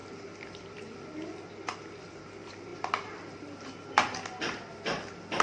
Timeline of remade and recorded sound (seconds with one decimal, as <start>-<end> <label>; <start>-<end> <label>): 0.0-5.4 recorded

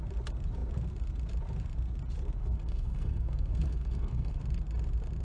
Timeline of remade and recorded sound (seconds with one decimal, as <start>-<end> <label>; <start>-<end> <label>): 0.0-2.4 recorded; 2.4-4.4 remade; 4.4-5.2 recorded

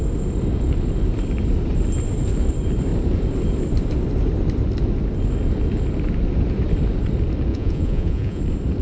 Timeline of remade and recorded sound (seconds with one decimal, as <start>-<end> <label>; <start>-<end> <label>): 0.0-7.5 recorded; 7.5-8.4 remade; 8.4-8.8 recorded

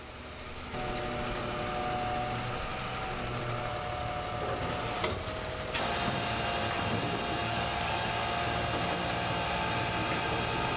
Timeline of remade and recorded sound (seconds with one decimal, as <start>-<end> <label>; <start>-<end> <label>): 0.0-7.4 recorded; 7.4-8.1 remade; 8.1-10.8 recorded

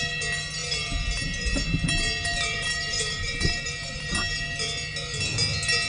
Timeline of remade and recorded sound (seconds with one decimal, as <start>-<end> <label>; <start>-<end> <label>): 0.0-0.6 recorded; 0.6-4.1 remade; 4.1-5.9 recorded

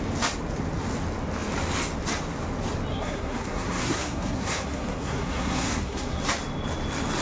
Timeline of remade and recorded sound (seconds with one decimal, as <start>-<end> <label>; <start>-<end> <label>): 0.0-2.9 recorded; 2.9-6.2 remade; 6.2-7.2 recorded

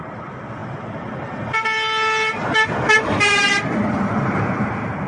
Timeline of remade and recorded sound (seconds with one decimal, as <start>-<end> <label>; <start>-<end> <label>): 0.0-5.1 recorded

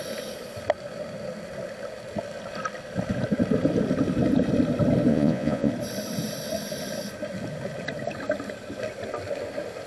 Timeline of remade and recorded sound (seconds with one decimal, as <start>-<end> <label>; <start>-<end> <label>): 0.0-5.1 recorded; 5.1-5.7 remade; 5.7-9.9 recorded